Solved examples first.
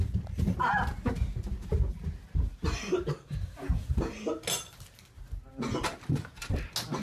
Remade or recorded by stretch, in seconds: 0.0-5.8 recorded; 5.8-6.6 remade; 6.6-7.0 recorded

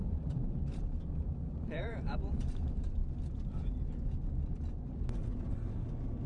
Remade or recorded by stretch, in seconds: 0.0-3.0 remade; 3.0-6.3 recorded

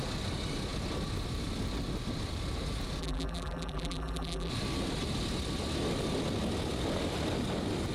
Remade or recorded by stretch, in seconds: 0.0-3.0 recorded; 3.0-4.5 remade; 4.5-7.9 recorded

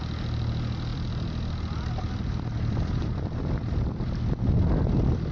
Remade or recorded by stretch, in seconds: 0.0-0.9 recorded; 0.9-4.1 remade; 4.1-5.3 recorded

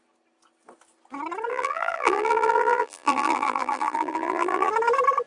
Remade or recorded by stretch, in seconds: 0.0-1.5 recorded; 1.5-4.7 remade; 4.7-5.3 recorded